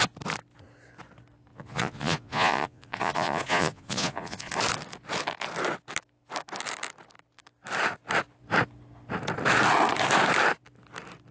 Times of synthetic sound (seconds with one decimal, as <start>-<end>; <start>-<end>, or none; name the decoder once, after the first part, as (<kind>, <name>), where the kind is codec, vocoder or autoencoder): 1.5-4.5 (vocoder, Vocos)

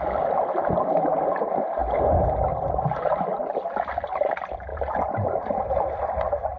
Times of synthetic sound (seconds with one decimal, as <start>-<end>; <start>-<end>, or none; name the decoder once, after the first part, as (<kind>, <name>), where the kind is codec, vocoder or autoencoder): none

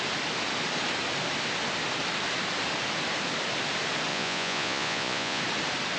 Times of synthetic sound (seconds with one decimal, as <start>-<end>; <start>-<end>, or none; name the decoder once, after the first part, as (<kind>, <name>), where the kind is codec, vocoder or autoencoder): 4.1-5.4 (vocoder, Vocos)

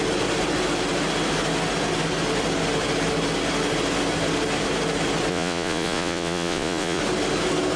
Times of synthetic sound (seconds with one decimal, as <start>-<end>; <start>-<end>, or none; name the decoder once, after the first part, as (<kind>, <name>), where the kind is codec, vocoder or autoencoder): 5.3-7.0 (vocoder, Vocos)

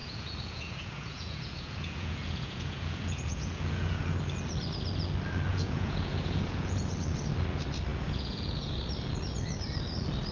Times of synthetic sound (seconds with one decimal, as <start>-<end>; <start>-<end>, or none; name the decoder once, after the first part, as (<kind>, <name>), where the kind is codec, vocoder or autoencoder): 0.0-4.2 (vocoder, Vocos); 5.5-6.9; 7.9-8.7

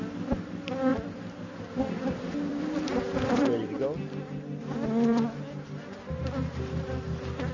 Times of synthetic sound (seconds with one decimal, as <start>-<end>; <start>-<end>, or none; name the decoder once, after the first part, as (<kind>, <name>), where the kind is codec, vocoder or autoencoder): none